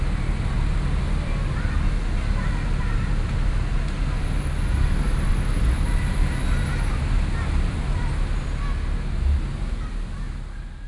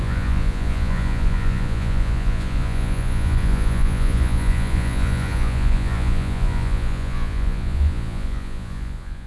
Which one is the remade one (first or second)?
second